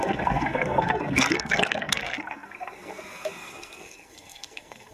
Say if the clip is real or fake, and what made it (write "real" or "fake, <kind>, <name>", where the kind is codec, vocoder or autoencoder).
fake, codec, SNAC